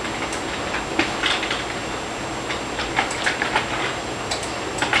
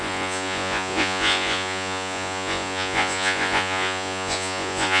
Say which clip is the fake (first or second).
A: second